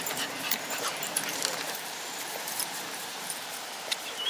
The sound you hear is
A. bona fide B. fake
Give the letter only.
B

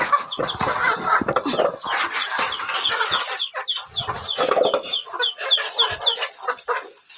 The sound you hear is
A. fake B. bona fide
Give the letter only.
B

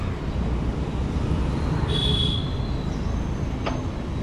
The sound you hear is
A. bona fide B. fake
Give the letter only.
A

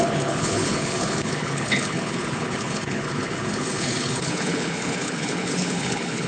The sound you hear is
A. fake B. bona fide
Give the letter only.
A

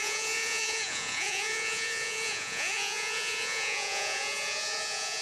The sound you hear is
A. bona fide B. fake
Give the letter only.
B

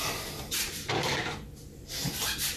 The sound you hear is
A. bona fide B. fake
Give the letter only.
B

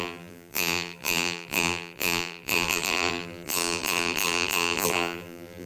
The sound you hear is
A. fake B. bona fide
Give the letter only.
A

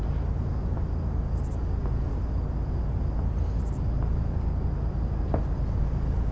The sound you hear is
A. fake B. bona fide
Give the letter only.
B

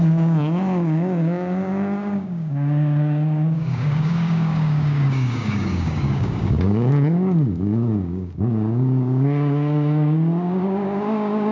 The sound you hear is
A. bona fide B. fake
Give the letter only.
B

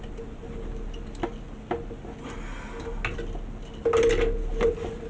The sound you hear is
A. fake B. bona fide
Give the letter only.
B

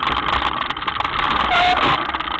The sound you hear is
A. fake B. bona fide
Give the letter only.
B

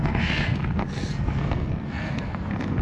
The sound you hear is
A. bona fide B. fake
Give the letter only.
B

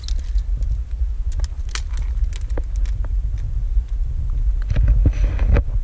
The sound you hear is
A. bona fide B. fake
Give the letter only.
A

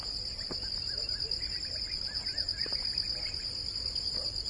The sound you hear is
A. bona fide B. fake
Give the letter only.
A